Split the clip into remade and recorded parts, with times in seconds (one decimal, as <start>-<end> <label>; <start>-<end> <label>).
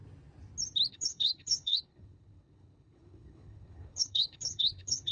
0.0-0.9 recorded; 0.9-5.1 remade